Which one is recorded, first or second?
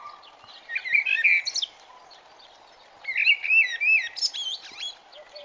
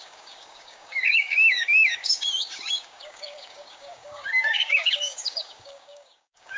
first